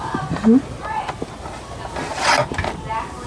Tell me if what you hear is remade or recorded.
recorded